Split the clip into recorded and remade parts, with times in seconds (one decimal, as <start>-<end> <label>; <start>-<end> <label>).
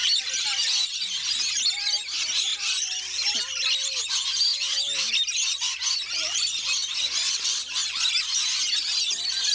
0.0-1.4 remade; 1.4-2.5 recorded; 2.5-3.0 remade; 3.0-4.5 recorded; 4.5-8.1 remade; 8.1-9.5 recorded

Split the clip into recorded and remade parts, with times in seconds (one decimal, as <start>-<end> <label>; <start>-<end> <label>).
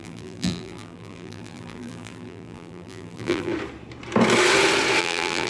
0.0-3.5 remade; 3.5-5.0 recorded; 5.0-5.5 remade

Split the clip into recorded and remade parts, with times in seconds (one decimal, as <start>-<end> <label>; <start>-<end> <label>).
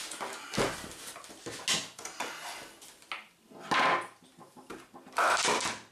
0.0-5.9 recorded